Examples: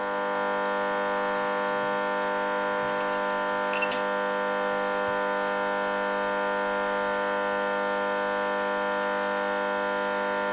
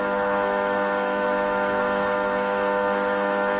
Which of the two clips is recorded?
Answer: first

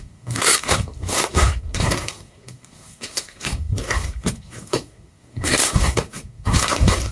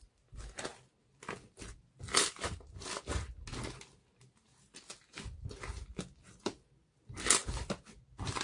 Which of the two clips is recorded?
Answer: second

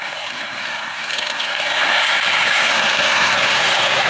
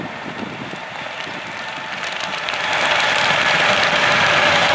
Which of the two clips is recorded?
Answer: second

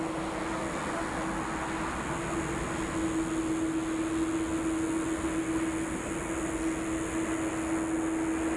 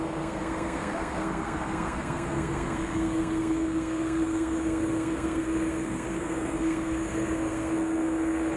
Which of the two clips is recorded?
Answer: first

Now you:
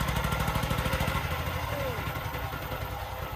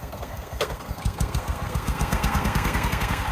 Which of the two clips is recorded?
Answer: first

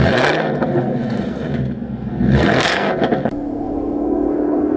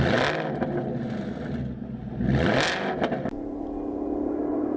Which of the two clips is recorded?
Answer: second